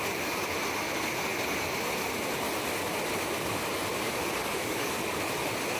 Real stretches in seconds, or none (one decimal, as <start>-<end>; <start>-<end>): 0.0-3.9; 4.9-5.8